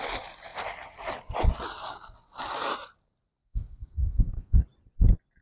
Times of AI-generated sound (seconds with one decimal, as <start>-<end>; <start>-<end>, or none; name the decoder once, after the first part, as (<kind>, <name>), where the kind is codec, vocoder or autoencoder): 3.4-4.6 (codec, SNAC)